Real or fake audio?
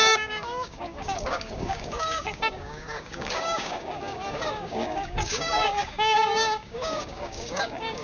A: fake